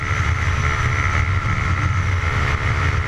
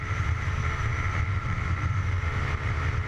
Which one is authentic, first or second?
first